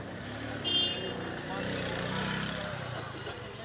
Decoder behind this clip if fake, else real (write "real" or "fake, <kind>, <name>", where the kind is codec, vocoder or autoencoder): real